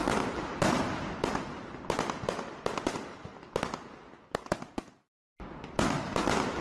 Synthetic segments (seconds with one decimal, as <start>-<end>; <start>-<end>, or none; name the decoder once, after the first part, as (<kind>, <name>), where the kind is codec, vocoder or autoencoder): none